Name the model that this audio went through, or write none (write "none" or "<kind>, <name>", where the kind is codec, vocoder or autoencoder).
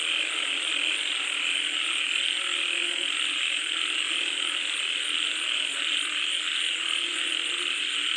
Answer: none